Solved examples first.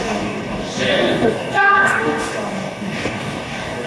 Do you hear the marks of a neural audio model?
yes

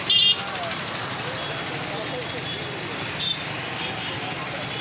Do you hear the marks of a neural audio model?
no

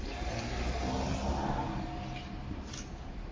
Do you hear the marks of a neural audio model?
no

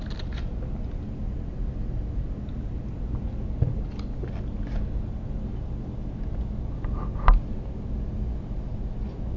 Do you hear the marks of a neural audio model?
no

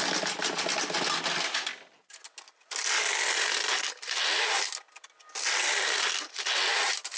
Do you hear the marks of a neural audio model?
no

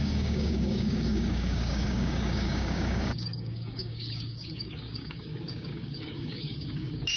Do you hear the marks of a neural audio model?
yes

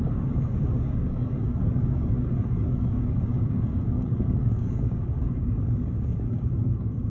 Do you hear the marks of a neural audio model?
yes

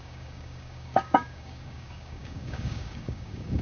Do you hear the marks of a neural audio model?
yes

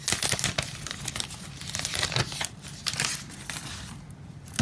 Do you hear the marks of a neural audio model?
no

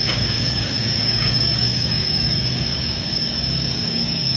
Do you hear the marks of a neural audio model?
yes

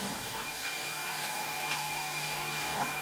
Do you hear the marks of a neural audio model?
yes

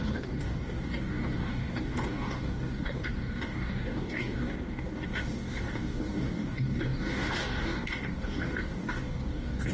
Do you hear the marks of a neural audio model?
yes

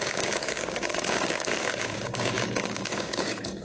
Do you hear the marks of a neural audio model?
yes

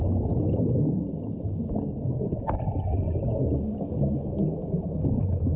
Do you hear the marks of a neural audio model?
no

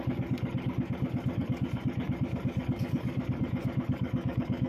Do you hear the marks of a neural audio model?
yes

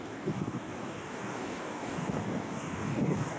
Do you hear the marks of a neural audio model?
yes